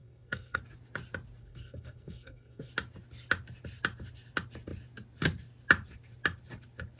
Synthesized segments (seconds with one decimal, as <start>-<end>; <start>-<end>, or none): 0.0-0.6; 1.4-2.7